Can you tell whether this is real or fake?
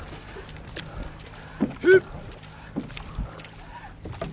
real